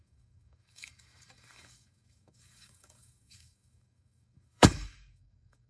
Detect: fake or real fake